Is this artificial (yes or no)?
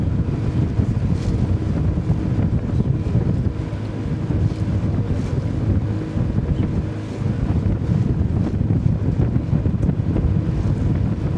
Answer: no